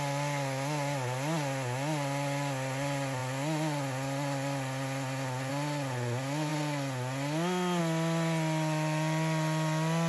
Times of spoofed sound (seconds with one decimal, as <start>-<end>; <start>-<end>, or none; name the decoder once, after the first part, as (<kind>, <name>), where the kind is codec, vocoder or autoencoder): none